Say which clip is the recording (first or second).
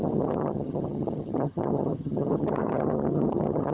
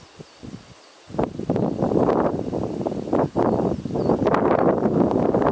second